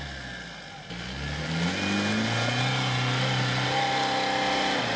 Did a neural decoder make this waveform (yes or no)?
no